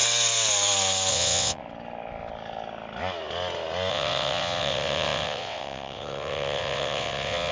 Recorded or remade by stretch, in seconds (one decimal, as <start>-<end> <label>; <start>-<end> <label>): 0.0-1.1 recorded; 1.1-1.6 remade; 1.6-3.9 recorded; 3.9-7.5 remade